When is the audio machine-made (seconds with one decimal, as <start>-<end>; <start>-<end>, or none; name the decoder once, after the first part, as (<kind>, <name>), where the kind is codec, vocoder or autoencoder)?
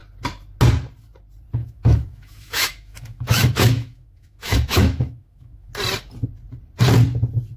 1.6-5.7 (autoencoder, DAC-VAE)